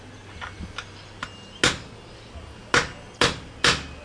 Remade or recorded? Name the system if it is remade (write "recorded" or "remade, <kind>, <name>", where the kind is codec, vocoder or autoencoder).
recorded